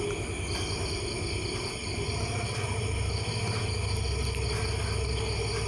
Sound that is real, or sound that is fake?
real